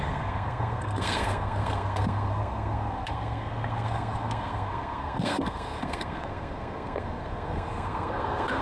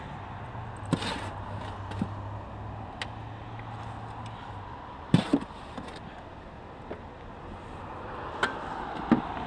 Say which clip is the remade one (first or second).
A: first